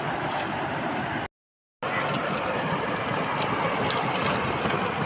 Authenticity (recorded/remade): recorded